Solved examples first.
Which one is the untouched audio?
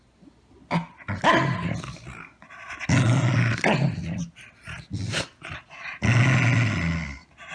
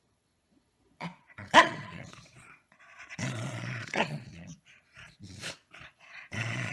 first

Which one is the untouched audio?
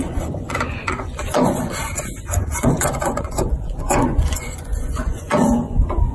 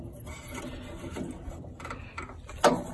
second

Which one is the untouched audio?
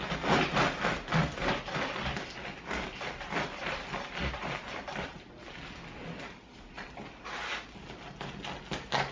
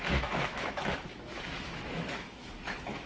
first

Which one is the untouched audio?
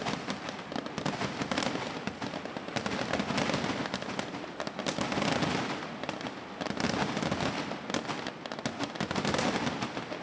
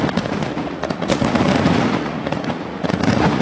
first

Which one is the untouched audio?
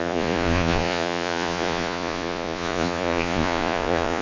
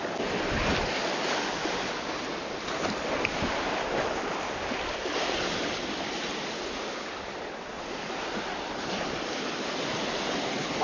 second